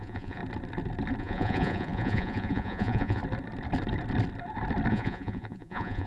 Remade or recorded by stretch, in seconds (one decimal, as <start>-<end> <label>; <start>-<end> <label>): 0.0-0.4 remade; 0.4-1.2 recorded; 1.2-3.2 remade; 3.2-4.9 recorded; 4.9-6.1 remade